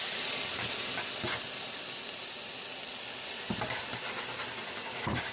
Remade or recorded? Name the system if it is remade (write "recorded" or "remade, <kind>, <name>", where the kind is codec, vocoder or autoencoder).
recorded